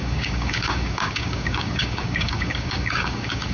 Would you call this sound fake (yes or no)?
yes